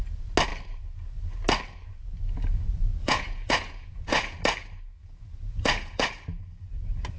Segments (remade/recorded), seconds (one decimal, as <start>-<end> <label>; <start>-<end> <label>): 0.0-3.0 recorded; 3.0-4.4 remade; 4.4-5.0 recorded; 5.0-6.1 remade; 6.1-7.2 recorded